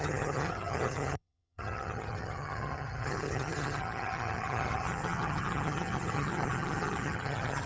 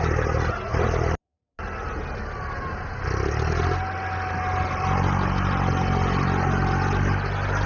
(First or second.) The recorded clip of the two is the second